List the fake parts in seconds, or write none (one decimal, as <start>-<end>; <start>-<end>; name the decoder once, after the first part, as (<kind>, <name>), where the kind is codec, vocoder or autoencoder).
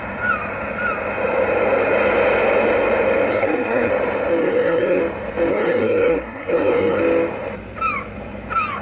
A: 3.3-3.9 (codec, SNAC); 4.4-5.0; 5.5-7.0